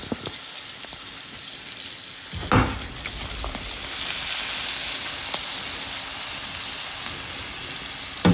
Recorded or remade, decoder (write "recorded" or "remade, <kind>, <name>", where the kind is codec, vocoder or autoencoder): recorded